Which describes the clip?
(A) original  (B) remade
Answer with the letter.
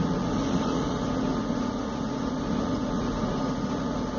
B